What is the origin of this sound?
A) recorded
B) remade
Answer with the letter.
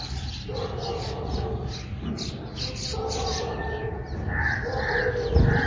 A